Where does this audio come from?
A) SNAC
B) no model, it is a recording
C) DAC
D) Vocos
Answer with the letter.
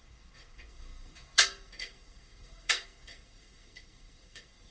A